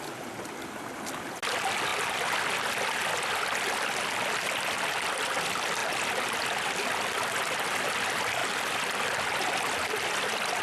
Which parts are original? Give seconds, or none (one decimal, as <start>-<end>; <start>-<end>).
0.0-10.6